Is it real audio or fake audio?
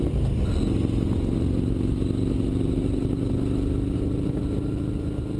real